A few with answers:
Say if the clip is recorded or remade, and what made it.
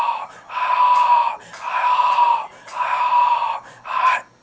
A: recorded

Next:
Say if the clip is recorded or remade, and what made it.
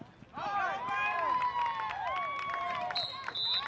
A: recorded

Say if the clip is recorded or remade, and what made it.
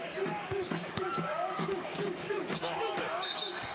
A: remade, codec, DAC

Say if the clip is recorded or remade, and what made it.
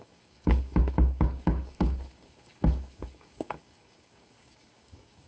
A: remade, codec, DAC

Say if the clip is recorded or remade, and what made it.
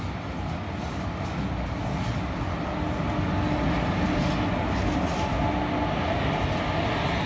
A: recorded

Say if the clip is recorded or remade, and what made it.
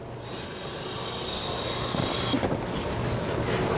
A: recorded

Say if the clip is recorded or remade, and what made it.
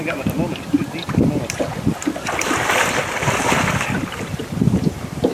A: recorded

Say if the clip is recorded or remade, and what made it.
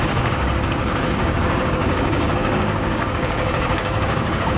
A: remade, codec, DAC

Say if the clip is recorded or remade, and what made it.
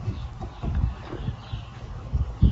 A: remade, codec, DAC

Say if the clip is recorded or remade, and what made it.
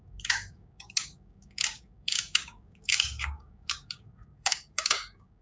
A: remade, codec, DAC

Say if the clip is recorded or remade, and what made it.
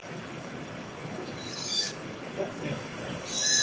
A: remade, codec, DAC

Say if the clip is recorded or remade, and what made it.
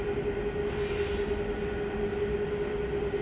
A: recorded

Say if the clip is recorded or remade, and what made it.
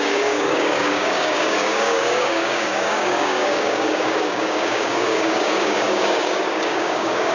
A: remade, codec, DAC